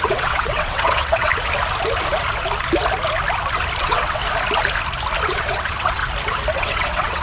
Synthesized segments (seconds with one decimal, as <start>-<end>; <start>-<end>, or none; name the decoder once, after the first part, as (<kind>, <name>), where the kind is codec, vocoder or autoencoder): 0.0-1.3 (vocoder, WaveNeXt); 3.8-4.2; 5.3-6.0; 6.5-7.2